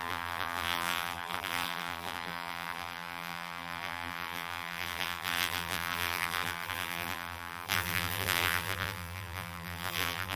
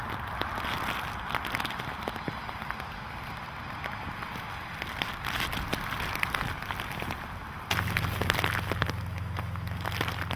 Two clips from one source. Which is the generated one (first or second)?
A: first